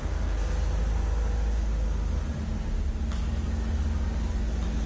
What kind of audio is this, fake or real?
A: real